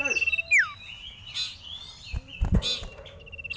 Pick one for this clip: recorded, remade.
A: recorded